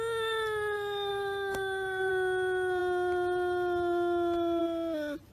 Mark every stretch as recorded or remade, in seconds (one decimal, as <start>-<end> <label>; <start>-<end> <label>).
0.0-1.1 recorded; 1.1-2.1 remade; 2.1-5.3 recorded